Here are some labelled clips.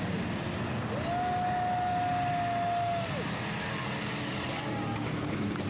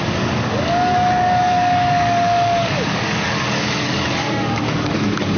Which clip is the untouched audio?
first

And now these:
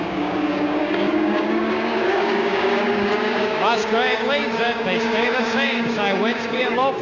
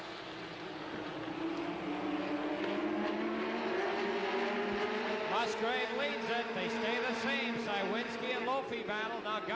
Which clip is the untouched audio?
second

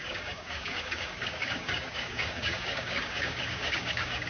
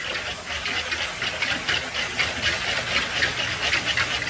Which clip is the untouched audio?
second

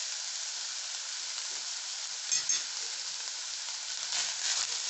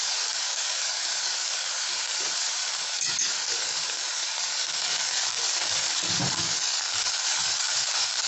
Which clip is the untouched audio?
first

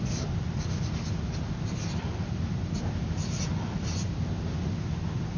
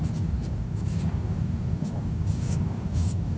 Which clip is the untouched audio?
first